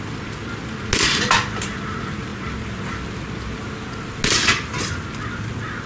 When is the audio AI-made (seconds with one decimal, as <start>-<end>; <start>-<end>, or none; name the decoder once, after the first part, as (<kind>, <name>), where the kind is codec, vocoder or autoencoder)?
none